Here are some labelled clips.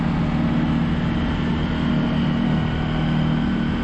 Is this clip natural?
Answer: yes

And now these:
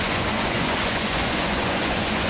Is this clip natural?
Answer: no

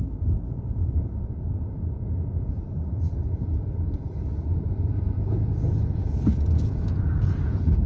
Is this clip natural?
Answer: no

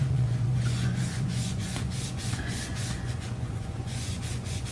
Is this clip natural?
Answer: no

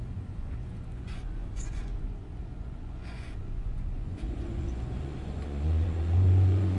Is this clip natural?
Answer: no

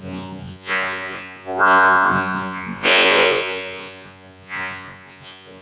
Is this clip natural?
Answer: no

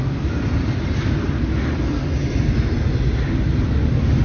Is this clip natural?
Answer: yes